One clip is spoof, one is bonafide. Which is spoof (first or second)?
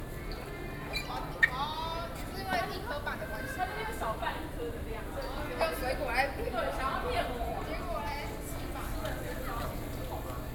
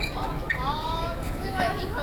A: second